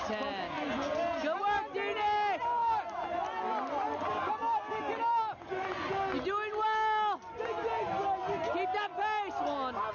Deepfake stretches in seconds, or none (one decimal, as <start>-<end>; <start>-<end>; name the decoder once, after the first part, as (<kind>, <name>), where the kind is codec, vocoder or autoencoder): none